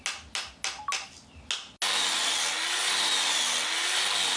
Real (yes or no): yes